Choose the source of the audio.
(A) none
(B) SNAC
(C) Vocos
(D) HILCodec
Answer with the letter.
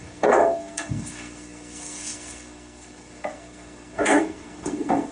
B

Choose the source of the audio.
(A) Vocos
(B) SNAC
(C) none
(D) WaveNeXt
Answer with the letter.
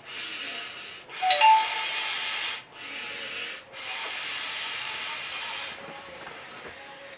C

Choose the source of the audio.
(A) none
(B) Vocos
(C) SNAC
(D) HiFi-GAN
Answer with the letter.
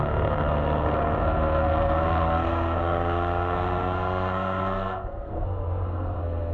C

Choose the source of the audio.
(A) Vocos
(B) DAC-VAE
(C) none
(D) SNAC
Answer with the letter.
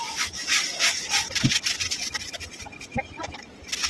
C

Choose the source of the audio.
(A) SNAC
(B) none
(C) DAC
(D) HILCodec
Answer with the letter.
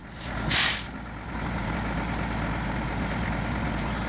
B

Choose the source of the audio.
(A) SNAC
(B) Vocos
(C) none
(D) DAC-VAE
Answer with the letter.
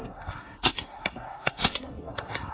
A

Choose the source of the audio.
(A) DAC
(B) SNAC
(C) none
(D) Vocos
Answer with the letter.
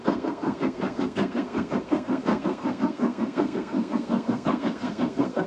B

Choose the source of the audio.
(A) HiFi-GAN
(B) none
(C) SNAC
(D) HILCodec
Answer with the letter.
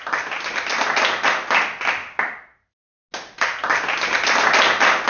B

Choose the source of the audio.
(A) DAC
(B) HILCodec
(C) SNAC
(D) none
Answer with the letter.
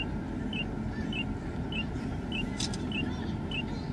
D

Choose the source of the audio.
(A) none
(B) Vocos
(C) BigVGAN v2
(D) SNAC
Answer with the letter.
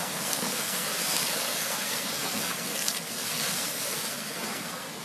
D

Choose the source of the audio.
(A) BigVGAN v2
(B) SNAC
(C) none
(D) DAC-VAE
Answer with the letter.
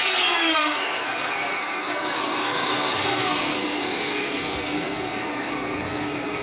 B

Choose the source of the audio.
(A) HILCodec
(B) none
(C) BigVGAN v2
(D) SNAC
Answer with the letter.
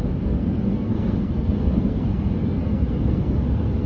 D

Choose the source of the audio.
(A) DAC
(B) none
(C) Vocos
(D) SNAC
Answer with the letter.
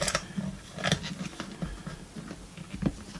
B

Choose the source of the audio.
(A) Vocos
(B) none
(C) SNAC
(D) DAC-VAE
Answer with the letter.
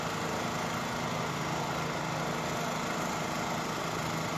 B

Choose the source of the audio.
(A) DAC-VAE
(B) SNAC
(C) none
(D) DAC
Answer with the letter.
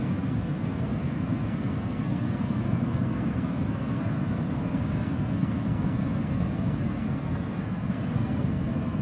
B